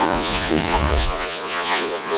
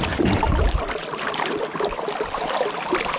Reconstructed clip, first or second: first